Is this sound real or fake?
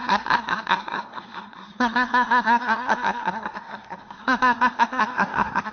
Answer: fake